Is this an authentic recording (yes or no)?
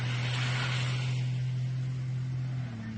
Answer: yes